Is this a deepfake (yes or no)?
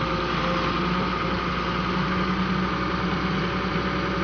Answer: no